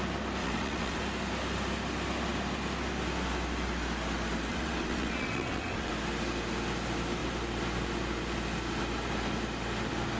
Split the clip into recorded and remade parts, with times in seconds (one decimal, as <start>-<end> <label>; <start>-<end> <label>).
0.0-0.4 recorded; 0.4-1.0 remade; 1.0-4.5 recorded; 4.5-5.9 remade; 5.9-10.2 recorded

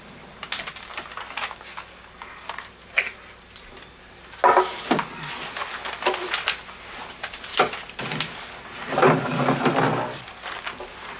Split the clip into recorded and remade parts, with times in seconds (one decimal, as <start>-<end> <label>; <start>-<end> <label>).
0.0-11.2 recorded

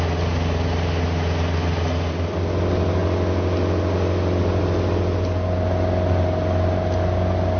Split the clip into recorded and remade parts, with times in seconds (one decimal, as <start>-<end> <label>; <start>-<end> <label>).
0.0-7.6 recorded

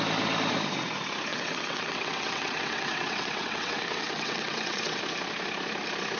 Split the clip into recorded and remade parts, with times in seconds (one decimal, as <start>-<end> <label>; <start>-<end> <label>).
0.0-1.3 recorded; 1.3-5.0 remade; 5.0-6.2 recorded

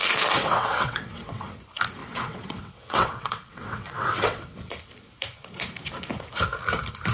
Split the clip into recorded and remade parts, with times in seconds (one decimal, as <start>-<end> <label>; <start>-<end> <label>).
0.0-0.4 recorded; 0.4-1.5 remade; 1.5-2.0 recorded; 2.0-4.7 remade; 4.7-7.1 recorded

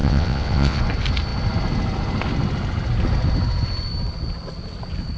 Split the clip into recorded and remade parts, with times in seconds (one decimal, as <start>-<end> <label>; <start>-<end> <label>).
0.0-0.8 remade; 0.8-5.2 recorded